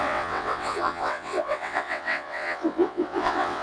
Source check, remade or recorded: remade